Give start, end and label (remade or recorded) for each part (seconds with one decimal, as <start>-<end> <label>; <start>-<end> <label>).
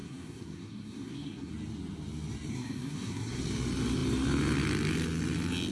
0.0-1.5 remade; 1.5-2.5 recorded; 2.5-3.4 remade; 3.4-5.7 recorded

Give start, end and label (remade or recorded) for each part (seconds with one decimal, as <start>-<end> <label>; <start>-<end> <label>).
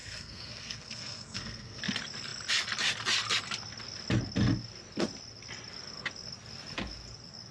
0.0-1.8 remade; 1.8-7.5 recorded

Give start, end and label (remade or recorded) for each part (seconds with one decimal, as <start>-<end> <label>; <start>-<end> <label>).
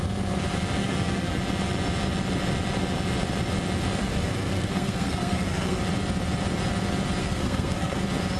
0.0-0.8 recorded; 0.8-1.4 remade; 1.4-4.0 recorded; 4.0-5.8 remade; 5.8-7.2 recorded; 7.2-8.0 remade; 8.0-8.4 recorded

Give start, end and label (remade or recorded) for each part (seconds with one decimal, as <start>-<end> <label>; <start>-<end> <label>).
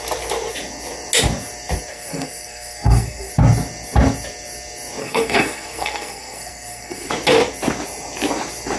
0.0-1.9 recorded; 1.9-3.3 remade; 3.3-5.0 recorded; 5.0-7.1 remade; 7.1-8.8 recorded